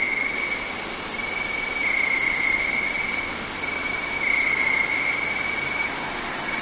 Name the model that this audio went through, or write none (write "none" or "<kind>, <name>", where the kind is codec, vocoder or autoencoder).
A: none